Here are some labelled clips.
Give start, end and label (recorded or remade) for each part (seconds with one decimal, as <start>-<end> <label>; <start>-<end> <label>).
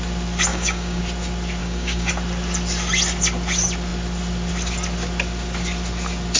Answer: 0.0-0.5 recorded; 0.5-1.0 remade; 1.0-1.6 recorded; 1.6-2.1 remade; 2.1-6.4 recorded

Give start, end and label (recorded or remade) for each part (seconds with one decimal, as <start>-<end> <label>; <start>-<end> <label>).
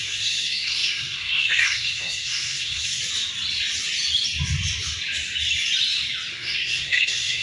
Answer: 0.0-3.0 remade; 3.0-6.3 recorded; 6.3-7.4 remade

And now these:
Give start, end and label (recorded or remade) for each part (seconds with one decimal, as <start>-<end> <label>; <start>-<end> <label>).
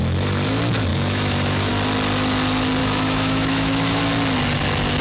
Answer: 0.0-0.9 recorded; 0.9-1.7 remade; 1.7-2.8 recorded; 2.8-4.0 remade; 4.0-5.0 recorded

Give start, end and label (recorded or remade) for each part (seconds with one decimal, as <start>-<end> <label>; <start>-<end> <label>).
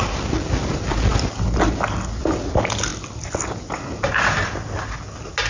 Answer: 0.0-5.5 recorded